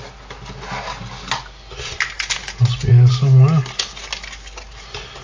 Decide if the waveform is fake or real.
real